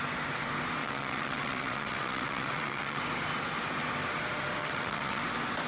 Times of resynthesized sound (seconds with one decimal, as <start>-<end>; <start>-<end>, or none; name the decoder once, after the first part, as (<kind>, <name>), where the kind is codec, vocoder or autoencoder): 0.8-3.0 (vocoder, WaveNeXt); 4.6-5.2